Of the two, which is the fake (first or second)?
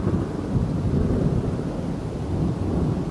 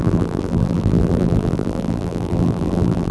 second